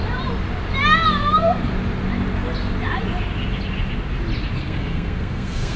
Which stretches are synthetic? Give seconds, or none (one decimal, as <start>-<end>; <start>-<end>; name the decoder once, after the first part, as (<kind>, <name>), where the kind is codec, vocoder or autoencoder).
1.2-1.6 (codec, SNAC); 4.6-5.8